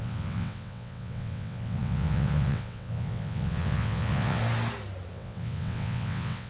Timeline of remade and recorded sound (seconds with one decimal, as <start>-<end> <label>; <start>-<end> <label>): 0.0-4.4 remade; 4.4-5.1 recorded; 5.1-6.5 remade